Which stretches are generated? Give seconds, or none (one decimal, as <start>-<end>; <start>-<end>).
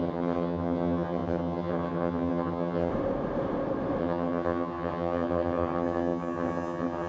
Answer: 0.0-2.9; 4.0-7.1